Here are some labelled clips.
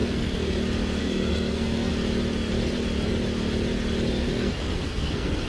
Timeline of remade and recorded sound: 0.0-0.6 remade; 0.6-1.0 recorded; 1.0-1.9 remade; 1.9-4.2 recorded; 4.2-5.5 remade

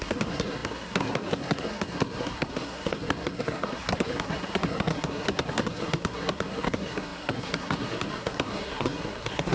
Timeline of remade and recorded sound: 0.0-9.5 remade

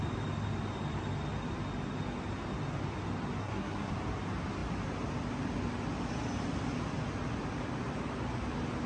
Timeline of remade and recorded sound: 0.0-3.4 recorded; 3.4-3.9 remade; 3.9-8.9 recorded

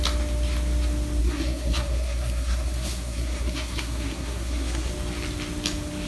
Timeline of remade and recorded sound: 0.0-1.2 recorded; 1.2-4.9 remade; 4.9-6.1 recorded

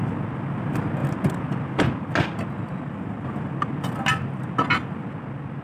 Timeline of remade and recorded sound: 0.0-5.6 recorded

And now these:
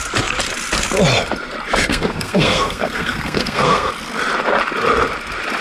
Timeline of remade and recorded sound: 0.0-1.9 recorded; 1.9-3.9 remade; 3.9-5.6 recorded